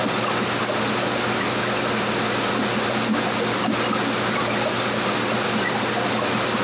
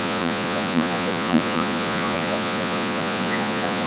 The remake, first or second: second